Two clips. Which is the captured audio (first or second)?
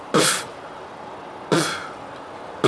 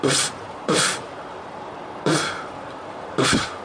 first